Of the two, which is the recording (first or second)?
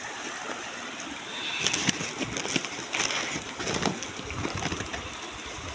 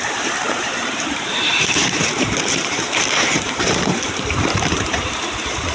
first